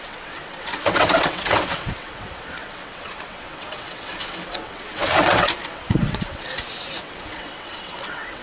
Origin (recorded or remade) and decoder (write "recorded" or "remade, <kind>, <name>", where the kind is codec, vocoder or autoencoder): remade, vocoder, WaveNeXt